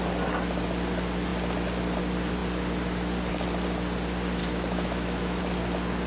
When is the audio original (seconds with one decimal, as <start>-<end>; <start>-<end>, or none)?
0.0-4.4; 5.4-6.1